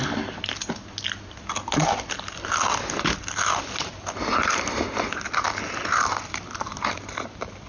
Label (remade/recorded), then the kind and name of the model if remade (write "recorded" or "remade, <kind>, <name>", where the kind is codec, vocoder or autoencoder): recorded